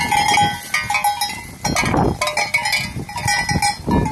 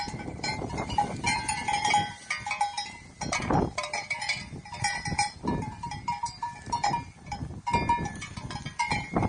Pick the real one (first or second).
first